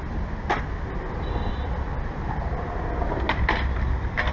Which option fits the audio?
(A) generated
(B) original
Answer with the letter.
B